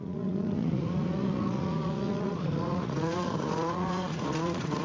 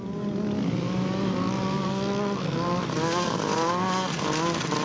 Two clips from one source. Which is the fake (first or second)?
first